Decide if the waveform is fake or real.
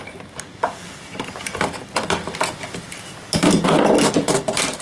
real